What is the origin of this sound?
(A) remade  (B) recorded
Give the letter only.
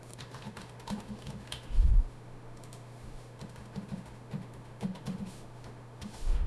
A